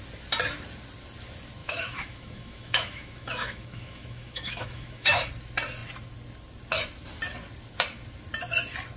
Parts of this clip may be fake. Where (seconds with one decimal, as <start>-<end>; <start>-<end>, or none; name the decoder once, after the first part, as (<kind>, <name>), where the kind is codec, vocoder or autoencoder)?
1.6-5.3 (autoencoder, DAC-VAE)